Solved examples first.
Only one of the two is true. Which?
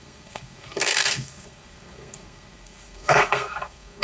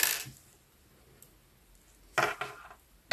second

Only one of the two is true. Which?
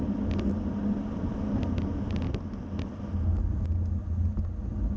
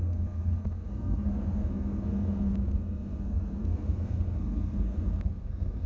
first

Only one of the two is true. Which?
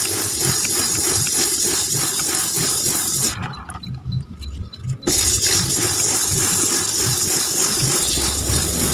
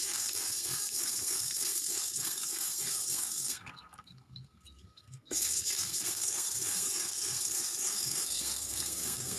first